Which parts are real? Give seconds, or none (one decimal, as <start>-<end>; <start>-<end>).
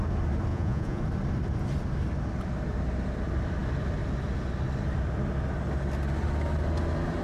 0.0-0.5; 1.0-7.2